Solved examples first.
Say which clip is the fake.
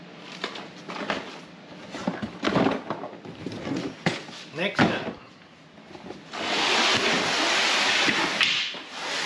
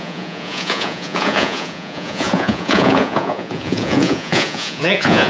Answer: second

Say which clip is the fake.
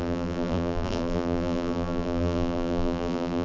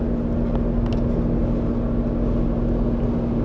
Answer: first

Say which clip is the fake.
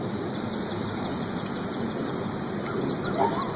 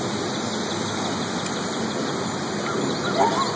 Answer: first